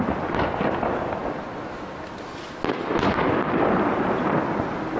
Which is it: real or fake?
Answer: real